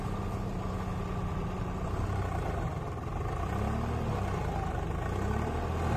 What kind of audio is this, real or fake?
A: real